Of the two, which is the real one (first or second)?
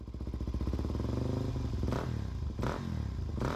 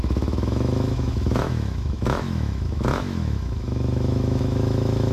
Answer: first